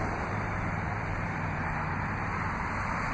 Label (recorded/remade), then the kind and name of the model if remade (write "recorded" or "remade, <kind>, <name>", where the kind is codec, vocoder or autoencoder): remade, vocoder, BigVGAN v2